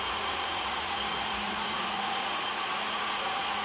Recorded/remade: remade